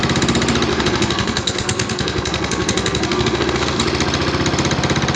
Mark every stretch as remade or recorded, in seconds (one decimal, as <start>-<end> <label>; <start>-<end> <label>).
0.0-0.7 recorded; 0.7-3.8 remade; 3.8-5.2 recorded